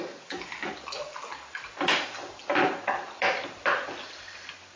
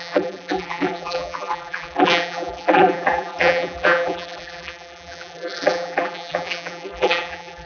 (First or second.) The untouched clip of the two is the first